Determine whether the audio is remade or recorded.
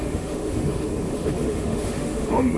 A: remade